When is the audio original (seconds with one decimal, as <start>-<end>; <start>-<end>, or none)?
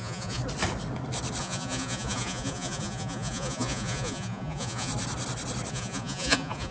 0.4-1.4; 4.9-5.7